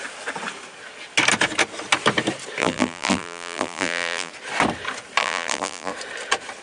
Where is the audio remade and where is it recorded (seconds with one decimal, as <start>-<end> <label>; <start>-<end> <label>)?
0.0-2.6 recorded; 2.6-4.3 remade; 4.3-5.2 recorded; 5.2-5.9 remade; 5.9-6.6 recorded